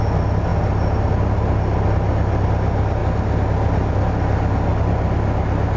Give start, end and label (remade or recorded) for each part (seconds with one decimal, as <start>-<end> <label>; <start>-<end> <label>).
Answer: 0.0-5.8 recorded